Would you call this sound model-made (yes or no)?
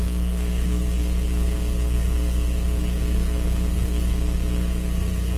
yes